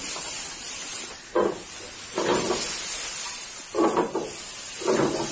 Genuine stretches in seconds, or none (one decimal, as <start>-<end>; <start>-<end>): 0.0-2.3; 4.4-5.3